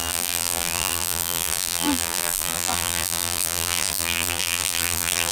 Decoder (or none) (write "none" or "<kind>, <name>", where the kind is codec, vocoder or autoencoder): vocoder, BigVGAN v2